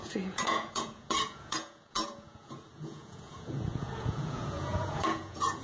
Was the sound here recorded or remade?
remade